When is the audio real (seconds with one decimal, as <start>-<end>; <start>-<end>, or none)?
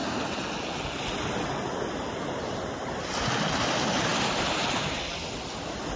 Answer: 0.0-6.0